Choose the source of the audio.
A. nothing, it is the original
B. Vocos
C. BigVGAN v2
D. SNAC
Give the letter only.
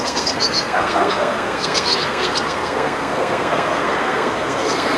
D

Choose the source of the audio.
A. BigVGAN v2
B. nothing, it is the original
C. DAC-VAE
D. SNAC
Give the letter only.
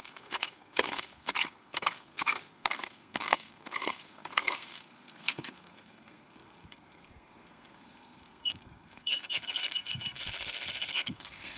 D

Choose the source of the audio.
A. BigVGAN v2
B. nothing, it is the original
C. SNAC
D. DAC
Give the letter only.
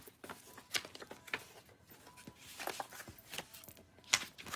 B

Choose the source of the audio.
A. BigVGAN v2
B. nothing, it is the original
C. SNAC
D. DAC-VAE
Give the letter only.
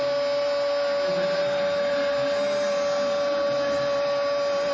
B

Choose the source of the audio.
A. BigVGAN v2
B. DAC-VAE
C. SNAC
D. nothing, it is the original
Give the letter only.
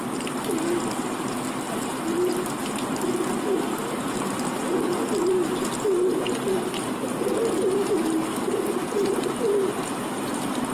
D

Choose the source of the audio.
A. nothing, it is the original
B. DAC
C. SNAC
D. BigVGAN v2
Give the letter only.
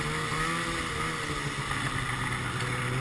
A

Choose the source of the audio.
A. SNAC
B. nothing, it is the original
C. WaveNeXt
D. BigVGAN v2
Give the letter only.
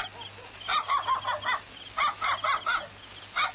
B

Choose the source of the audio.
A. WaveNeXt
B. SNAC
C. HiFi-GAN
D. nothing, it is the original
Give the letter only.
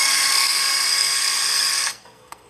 B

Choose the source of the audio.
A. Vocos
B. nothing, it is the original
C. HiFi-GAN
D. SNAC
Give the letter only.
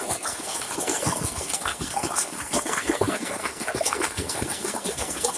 D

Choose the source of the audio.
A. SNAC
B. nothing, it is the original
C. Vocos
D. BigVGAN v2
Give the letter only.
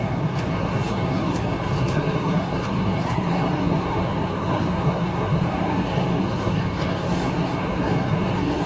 A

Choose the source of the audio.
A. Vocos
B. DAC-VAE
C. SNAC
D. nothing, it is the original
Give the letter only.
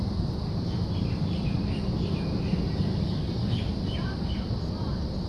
D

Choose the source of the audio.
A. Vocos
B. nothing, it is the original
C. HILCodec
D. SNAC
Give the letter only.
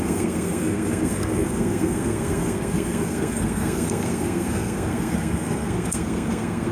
D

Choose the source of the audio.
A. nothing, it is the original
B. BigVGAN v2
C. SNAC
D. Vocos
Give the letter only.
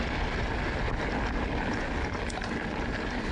A